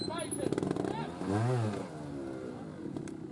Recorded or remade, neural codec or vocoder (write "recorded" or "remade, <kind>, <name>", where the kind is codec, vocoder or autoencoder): recorded